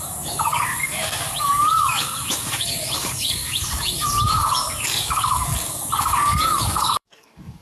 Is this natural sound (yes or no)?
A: no